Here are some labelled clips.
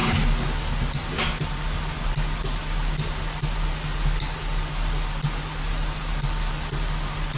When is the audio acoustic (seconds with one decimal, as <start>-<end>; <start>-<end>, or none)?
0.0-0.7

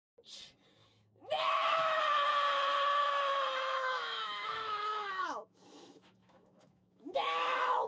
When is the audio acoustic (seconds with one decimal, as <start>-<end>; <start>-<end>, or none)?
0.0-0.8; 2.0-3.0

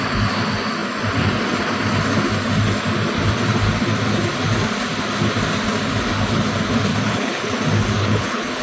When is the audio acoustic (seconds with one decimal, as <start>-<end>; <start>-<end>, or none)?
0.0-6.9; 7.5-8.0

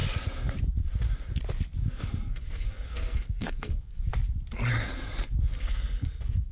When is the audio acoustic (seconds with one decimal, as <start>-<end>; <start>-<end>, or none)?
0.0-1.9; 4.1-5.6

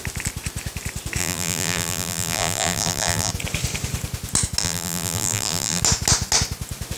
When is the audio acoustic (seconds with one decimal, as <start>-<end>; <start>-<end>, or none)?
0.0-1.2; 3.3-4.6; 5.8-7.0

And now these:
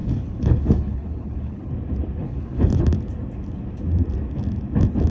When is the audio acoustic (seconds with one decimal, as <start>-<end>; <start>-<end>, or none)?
1.7-2.2; 2.8-5.1